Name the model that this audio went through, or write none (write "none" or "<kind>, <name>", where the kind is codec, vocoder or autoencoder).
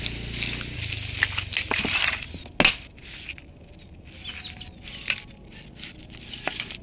none